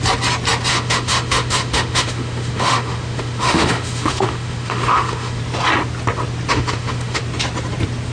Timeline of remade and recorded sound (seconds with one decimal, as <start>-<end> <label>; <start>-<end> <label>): 0.0-0.7 recorded; 0.7-5.4 remade; 5.4-6.5 recorded; 6.5-7.2 remade; 7.2-8.1 recorded